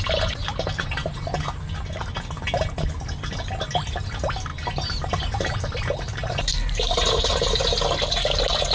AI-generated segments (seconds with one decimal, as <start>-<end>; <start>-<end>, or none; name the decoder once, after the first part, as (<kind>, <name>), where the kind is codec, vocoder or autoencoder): 4.5-7.6 (vocoder, BigVGAN v2)